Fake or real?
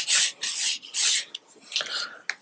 real